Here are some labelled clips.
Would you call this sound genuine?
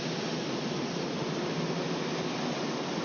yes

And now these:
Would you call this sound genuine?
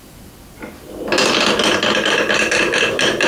yes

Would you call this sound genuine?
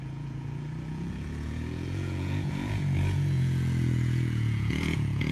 no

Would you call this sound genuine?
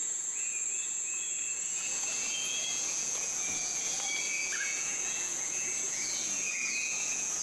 no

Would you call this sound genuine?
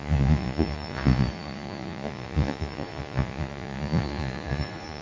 no